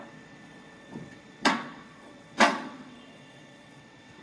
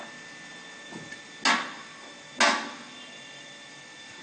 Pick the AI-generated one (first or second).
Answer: first